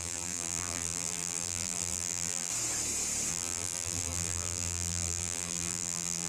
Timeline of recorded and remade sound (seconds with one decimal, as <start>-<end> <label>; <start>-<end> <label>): 0.0-2.5 remade; 2.5-3.3 recorded; 3.3-6.3 remade